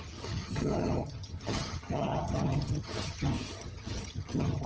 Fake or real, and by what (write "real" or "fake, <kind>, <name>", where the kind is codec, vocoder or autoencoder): fake, vocoder, HiFi-GAN